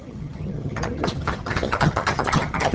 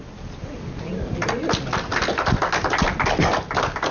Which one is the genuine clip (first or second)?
second